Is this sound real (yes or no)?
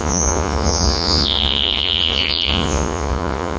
no